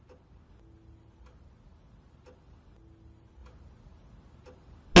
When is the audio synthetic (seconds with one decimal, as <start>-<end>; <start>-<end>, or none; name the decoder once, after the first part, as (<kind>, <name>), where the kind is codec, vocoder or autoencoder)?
none